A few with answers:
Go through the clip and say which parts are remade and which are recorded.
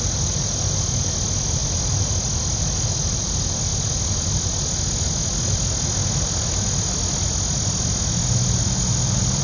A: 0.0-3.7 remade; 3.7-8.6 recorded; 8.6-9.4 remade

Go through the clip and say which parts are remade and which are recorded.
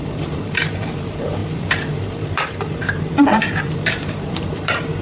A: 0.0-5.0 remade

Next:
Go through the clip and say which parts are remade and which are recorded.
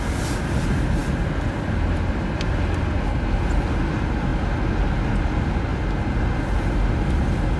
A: 0.0-7.6 recorded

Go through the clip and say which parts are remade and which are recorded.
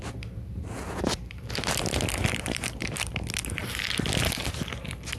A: 0.0-2.2 recorded; 2.2-3.1 remade; 3.1-5.2 recorded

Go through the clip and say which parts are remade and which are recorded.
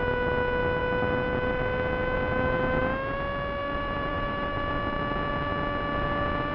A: 0.0-3.6 recorded; 3.6-4.7 remade; 4.7-6.5 recorded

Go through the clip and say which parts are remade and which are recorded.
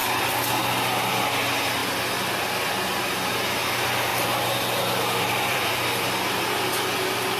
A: 0.0-4.1 recorded; 4.1-5.7 remade; 5.7-7.4 recorded